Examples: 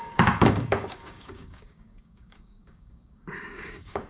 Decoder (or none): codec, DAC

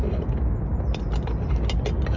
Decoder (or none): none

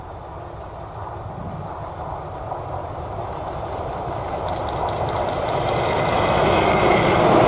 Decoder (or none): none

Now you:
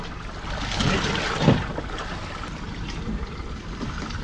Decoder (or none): none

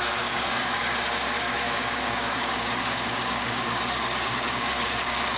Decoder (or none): codec, DAC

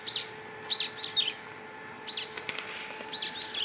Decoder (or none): none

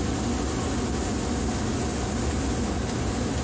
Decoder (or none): none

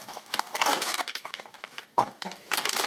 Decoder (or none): codec, DAC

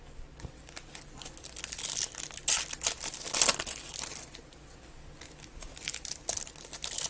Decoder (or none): none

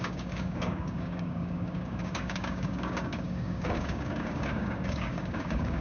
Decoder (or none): codec, DAC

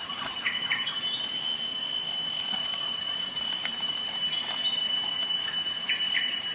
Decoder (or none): none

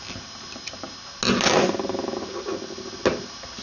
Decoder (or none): none